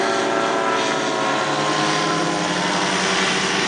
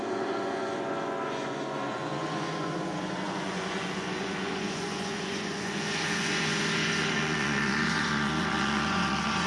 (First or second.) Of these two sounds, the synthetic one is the second